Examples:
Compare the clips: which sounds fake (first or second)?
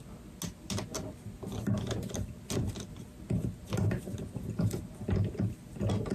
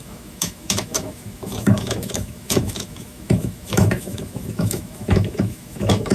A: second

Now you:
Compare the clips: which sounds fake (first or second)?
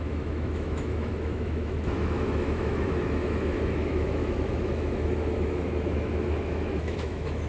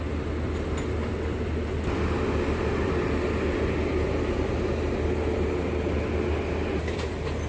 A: first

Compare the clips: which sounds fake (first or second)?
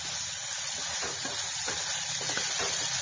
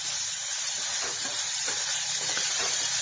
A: second